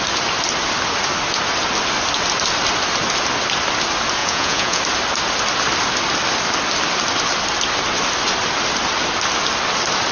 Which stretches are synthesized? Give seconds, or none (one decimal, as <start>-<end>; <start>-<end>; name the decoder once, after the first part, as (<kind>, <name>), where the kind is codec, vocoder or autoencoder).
4.2-4.8 (vocoder, Vocos)